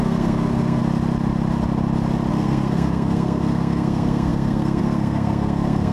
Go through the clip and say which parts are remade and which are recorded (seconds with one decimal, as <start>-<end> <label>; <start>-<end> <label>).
0.0-0.8 remade; 0.8-2.3 recorded; 2.3-5.9 remade

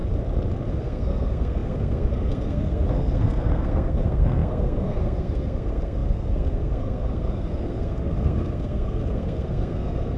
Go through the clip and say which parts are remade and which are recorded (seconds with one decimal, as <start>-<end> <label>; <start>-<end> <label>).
0.0-0.7 recorded; 0.7-10.2 remade

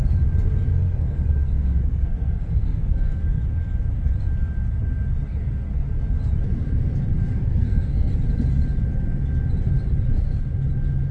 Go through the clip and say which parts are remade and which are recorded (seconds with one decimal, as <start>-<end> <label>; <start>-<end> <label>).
0.0-0.7 recorded; 0.7-3.4 remade; 3.4-7.4 recorded; 7.4-8.1 remade; 8.1-11.1 recorded